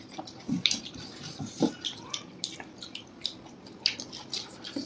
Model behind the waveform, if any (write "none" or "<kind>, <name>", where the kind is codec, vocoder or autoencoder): vocoder, BigVGAN v2